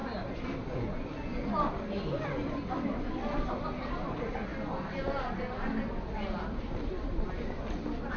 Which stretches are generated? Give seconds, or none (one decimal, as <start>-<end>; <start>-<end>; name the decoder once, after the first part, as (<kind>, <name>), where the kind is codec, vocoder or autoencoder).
4.5-7.3 (vocoder, BigVGAN v2)